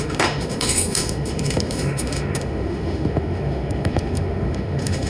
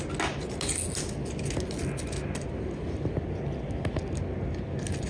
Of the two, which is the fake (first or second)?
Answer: first